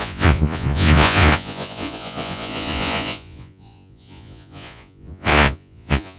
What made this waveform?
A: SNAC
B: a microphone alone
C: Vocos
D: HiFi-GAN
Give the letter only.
C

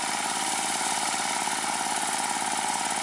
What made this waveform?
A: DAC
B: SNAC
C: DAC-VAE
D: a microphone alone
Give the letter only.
D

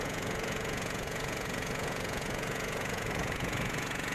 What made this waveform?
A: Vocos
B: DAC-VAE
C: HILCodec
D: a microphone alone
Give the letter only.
A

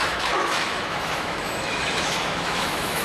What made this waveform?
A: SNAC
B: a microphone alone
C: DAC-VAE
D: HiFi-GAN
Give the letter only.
C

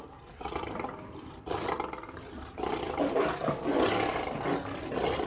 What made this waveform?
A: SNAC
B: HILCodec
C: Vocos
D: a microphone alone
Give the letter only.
D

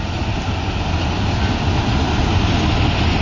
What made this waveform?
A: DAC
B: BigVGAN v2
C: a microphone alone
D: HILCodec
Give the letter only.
C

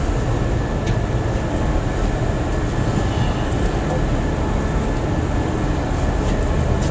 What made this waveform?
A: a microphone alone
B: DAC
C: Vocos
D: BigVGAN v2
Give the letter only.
A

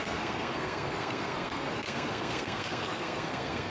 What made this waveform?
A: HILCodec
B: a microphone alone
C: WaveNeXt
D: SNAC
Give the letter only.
D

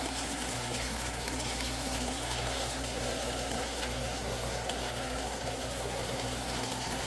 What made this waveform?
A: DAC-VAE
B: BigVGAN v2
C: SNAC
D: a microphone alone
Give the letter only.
C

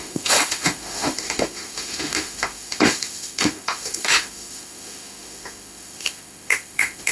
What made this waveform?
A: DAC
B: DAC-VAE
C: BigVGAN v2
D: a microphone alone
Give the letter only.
B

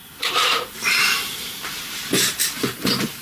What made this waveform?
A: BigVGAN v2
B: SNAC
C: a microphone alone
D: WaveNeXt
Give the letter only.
A